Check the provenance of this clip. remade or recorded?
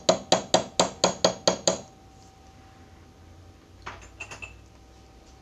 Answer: recorded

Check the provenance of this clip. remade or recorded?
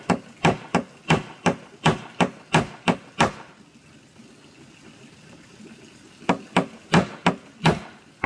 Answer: recorded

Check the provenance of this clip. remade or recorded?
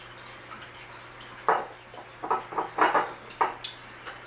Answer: recorded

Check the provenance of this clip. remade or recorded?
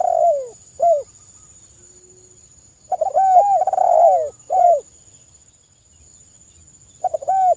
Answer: recorded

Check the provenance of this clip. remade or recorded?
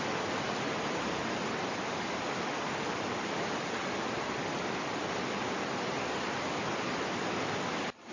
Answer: recorded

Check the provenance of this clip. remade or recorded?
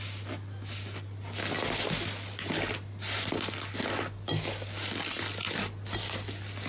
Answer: recorded